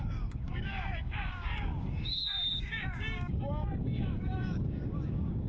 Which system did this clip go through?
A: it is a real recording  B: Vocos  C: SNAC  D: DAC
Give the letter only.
D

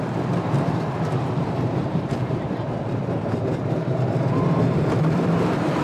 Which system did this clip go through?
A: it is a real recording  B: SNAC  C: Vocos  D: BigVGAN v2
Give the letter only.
D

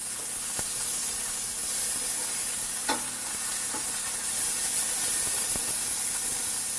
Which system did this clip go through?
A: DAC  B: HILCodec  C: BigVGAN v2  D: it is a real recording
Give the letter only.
D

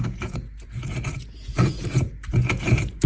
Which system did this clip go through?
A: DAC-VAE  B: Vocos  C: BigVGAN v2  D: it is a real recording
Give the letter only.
B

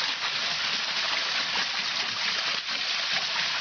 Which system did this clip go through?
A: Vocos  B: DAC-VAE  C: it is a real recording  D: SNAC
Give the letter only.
C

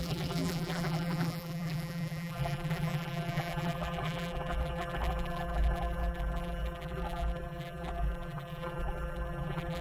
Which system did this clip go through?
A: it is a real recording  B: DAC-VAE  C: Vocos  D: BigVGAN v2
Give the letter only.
D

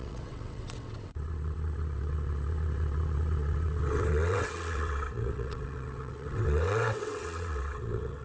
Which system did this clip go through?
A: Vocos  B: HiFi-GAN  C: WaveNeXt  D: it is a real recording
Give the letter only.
C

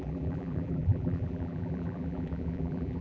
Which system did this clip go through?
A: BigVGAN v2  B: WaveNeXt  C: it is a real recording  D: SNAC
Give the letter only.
A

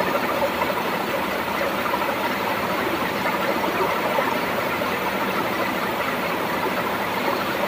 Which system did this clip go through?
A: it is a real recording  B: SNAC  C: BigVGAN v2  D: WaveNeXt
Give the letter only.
C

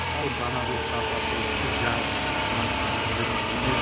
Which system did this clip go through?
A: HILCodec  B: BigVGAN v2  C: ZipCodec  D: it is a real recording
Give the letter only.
B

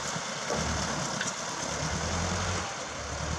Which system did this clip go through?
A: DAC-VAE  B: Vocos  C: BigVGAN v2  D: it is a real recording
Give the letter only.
D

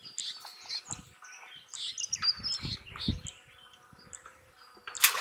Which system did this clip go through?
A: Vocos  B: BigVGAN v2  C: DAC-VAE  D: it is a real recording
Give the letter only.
D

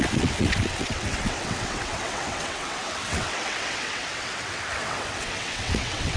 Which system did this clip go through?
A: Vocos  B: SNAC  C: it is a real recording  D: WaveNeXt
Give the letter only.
D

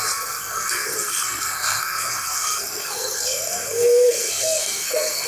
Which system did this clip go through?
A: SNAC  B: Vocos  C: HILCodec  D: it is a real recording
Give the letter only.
A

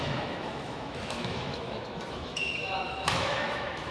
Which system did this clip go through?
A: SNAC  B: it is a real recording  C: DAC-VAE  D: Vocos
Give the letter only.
C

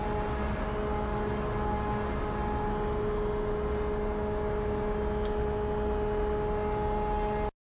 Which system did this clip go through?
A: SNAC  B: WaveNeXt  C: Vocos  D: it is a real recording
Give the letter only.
D